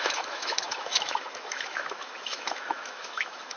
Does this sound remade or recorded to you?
remade